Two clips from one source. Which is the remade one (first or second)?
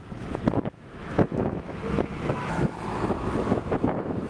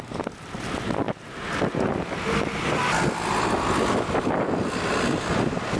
first